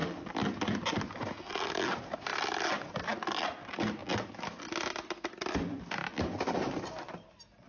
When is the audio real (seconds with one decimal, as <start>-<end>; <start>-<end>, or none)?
0.0-7.7